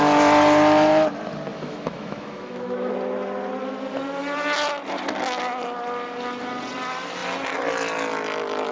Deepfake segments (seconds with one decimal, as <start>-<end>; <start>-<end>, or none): 1.5-2.9